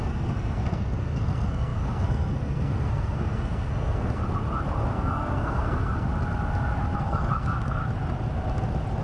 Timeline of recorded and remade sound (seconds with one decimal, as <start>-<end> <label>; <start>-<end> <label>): 0.0-4.2 remade; 4.2-4.9 recorded; 4.9-6.1 remade; 6.1-7.0 recorded; 7.0-7.8 remade; 7.8-9.0 recorded